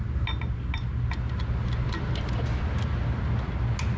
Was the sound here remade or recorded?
recorded